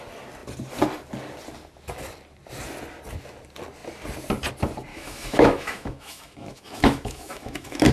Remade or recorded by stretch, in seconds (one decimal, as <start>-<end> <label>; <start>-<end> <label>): 0.0-4.9 recorded; 4.9-7.9 remade